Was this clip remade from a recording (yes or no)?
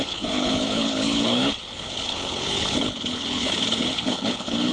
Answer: yes